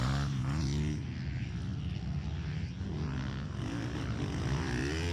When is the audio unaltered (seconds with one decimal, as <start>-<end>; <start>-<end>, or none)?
0.0-5.1